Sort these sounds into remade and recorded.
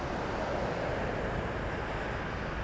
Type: recorded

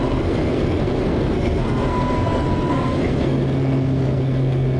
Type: remade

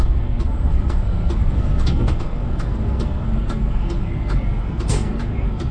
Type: remade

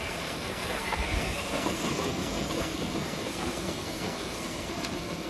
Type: remade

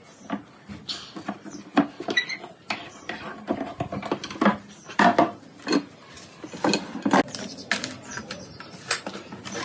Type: recorded